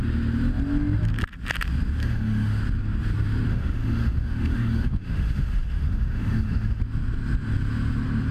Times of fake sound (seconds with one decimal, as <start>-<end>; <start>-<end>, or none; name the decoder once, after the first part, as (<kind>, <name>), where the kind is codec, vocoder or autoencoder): 2.0-2.6 (autoencoder, DAC-VAE); 3.5-6.8